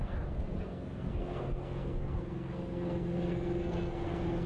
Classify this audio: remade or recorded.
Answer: remade